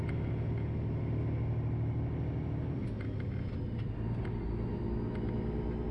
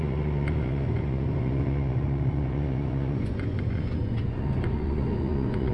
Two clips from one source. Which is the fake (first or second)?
second